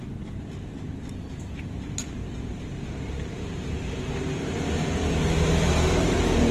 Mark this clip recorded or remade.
remade